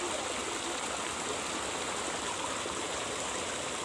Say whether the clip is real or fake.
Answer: real